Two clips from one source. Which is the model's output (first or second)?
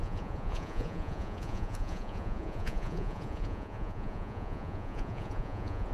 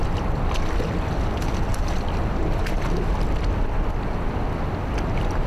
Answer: first